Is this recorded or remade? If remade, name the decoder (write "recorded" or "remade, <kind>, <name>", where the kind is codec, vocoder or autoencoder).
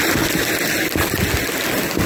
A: recorded